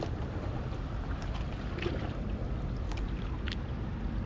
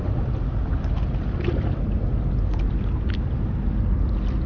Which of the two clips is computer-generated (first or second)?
first